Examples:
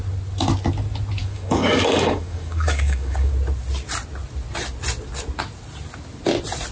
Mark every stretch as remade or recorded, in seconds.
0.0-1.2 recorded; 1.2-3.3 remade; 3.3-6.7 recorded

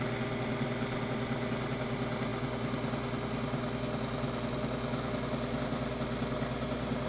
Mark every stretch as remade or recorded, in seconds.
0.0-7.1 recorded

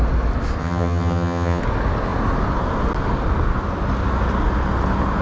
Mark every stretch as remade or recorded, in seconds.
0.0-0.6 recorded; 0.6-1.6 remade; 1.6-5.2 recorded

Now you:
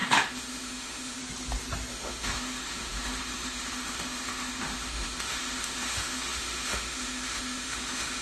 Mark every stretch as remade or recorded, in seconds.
0.0-1.2 remade; 1.2-1.9 recorded; 1.9-8.2 remade

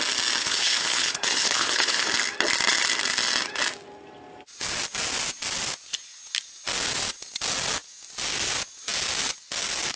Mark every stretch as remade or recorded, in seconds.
0.0-0.4 recorded; 0.4-2.1 remade; 2.1-10.0 recorded

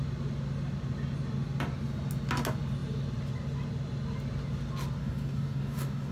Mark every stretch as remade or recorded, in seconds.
0.0-5.0 recorded; 5.0-6.1 remade

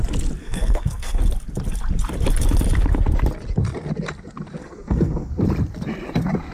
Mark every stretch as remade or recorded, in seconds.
0.0-0.4 recorded; 0.4-1.2 remade; 1.2-4.6 recorded; 4.6-5.3 remade; 5.3-6.5 recorded